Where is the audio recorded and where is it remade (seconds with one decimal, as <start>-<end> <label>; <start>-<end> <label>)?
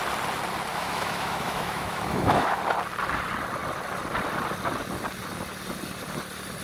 0.0-0.7 recorded; 0.7-2.6 remade; 2.6-6.6 recorded